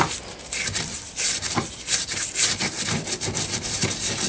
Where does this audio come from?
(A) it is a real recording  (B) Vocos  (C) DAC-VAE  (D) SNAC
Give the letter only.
A